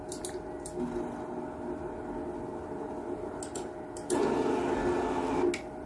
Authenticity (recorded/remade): recorded